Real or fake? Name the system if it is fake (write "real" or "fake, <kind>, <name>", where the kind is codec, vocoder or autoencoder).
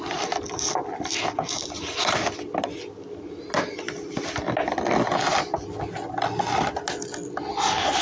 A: real